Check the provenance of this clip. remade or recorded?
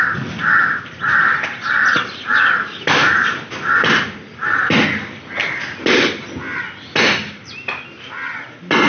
recorded